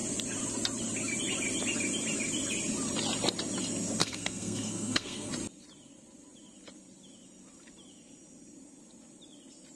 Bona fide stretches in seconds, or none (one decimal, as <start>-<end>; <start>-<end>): 0.0-4.0; 5.3-9.8